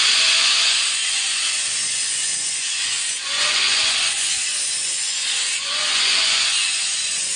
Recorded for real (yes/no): no